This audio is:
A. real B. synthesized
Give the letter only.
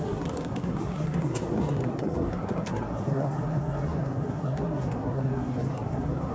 B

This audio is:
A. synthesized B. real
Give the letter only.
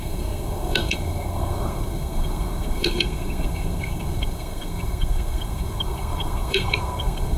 A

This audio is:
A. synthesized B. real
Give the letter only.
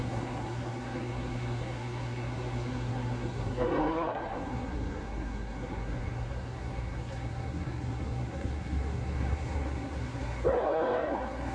A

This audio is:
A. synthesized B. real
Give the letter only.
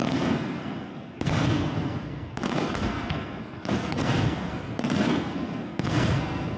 A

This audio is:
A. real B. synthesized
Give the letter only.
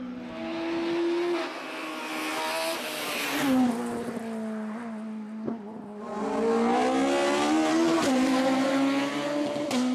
A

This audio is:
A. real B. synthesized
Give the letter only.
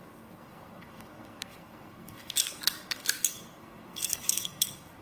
B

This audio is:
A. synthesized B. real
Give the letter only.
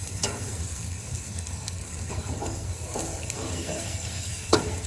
A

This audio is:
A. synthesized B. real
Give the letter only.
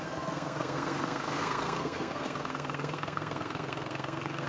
A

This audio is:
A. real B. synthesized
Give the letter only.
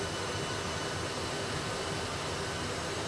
A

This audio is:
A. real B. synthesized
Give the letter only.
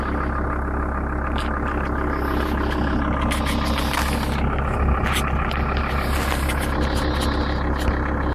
A